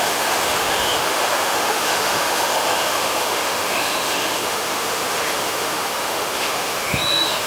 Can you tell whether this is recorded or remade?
remade